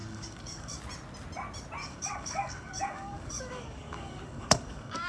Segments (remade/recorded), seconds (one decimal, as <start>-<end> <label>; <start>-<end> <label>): 0.0-0.8 remade; 0.8-1.8 recorded; 1.8-5.1 remade